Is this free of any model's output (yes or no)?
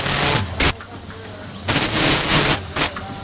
yes